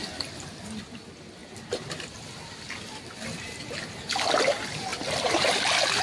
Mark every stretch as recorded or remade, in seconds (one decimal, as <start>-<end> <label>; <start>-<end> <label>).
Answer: 0.0-1.4 recorded; 1.4-2.3 remade; 2.3-4.9 recorded; 4.9-6.0 remade

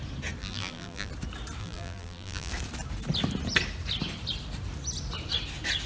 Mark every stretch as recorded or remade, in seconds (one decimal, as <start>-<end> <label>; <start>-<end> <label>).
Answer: 0.0-0.4 recorded; 0.4-1.1 remade; 1.1-1.6 recorded; 1.6-2.5 remade; 2.5-5.9 recorded

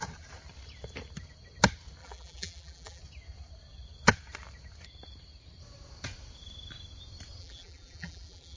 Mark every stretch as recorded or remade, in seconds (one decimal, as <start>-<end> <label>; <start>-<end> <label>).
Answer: 0.0-2.0 recorded; 2.0-3.0 remade; 3.0-7.4 recorded; 7.4-8.6 remade

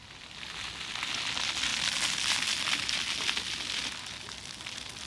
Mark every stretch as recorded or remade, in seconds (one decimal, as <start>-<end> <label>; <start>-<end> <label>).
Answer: 0.0-5.1 recorded

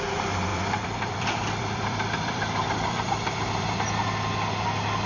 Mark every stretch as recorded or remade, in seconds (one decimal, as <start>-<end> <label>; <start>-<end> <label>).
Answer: 0.0-0.5 recorded; 0.5-3.6 remade; 3.6-5.1 recorded

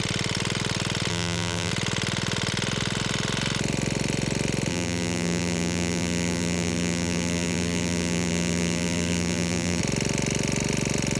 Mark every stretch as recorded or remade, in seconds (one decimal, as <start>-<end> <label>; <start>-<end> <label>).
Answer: 0.0-1.1 recorded; 1.1-1.7 remade; 1.7-4.7 recorded; 4.7-9.8 remade; 9.8-11.2 recorded

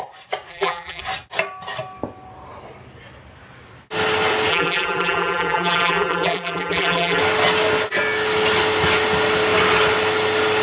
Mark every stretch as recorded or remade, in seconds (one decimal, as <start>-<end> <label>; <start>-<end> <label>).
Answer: 0.0-0.5 recorded; 0.5-1.0 remade; 1.0-4.5 recorded; 4.5-7.2 remade; 7.2-10.6 recorded

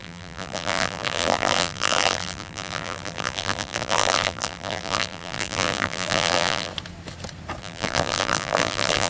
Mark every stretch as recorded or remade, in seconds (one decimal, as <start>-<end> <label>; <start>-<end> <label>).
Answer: 0.0-6.7 remade; 6.7-7.6 recorded; 7.6-9.1 remade